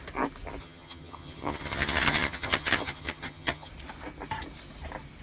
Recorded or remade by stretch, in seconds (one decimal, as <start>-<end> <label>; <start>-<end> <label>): 0.0-0.6 recorded; 0.6-3.7 remade; 3.7-5.2 recorded